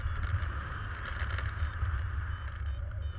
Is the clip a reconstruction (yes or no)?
no